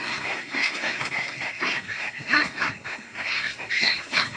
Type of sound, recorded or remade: remade